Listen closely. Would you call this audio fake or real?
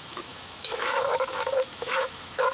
fake